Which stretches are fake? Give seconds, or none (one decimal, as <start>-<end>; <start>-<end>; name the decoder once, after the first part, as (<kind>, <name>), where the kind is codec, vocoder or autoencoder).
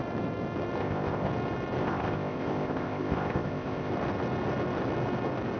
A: 0.8-1.3 (codec, ZipCodec); 1.8-3.9